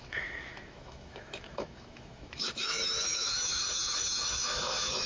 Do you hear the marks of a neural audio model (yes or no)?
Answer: yes